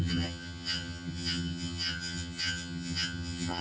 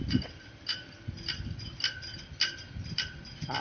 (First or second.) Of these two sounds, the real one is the second